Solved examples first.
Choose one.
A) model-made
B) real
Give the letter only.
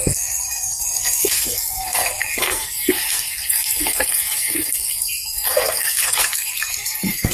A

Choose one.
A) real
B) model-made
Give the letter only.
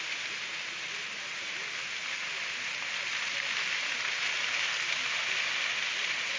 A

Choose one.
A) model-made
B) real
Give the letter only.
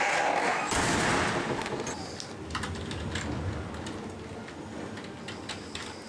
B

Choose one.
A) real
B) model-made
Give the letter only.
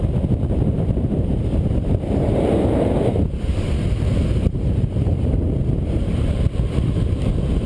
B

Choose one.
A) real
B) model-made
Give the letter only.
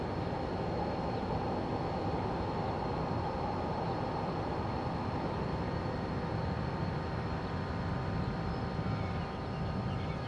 A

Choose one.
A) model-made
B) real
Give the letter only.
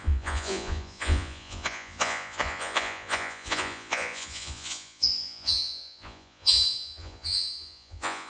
A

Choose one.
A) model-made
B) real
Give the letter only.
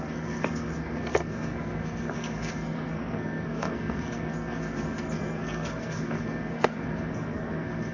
A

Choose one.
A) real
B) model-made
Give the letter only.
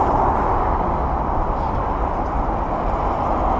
A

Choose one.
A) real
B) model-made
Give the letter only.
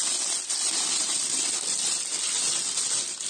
A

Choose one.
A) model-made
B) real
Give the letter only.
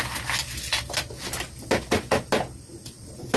B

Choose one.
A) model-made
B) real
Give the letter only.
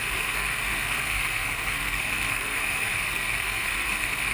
A